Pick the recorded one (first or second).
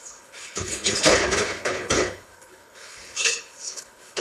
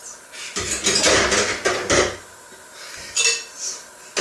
second